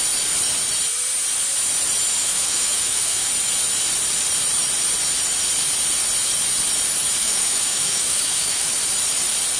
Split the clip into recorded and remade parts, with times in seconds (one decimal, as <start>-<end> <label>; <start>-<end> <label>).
0.0-2.2 recorded; 2.2-3.3 remade; 3.3-7.2 recorded; 7.2-8.7 remade; 8.7-9.6 recorded